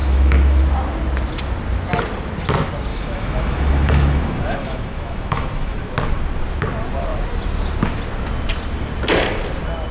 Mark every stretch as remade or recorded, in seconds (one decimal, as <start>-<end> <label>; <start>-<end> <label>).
0.0-0.6 remade; 0.6-2.9 recorded; 2.9-5.8 remade; 5.8-9.9 recorded

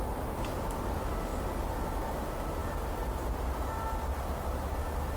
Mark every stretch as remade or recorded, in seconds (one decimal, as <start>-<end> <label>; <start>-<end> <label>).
0.0-5.2 recorded

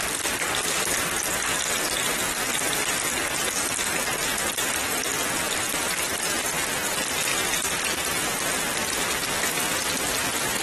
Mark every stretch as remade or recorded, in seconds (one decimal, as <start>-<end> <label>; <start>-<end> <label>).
0.0-10.6 recorded

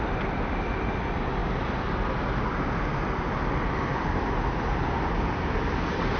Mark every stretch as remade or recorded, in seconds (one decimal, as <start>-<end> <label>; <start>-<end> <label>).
0.0-6.2 recorded

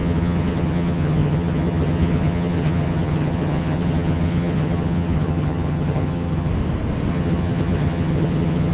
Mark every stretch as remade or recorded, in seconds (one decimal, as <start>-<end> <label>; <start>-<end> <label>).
0.0-6.5 remade; 6.5-7.1 recorded; 7.1-8.7 remade

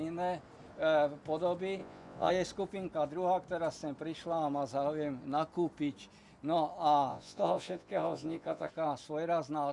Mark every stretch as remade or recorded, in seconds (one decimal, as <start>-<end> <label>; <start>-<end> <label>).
0.0-1.8 recorded; 1.8-2.3 remade; 2.3-7.1 recorded; 7.1-8.7 remade; 8.7-9.7 recorded

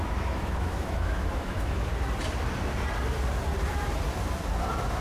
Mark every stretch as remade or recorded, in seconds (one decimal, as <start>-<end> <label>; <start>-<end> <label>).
0.0-1.9 remade; 1.9-5.0 recorded

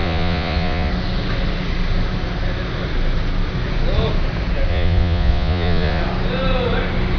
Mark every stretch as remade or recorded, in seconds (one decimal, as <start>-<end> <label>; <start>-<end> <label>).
0.0-0.9 remade; 0.9-4.7 recorded; 4.7-6.0 remade; 6.0-7.2 recorded